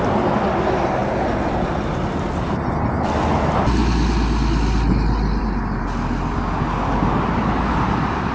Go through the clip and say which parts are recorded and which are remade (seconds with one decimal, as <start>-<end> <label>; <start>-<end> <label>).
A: 0.0-8.3 recorded